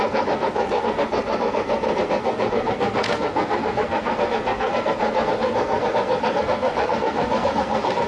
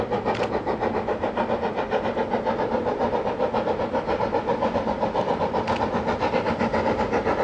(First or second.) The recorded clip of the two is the second